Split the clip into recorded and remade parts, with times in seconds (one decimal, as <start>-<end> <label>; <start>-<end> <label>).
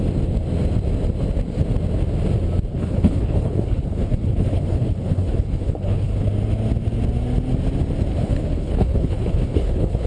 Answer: 0.0-2.7 recorded; 2.7-6.3 remade; 6.3-8.1 recorded; 8.1-10.1 remade